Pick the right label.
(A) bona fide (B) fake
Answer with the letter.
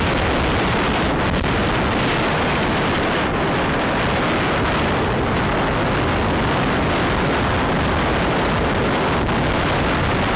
A